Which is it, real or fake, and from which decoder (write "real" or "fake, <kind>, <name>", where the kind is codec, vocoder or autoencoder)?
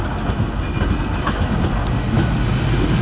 real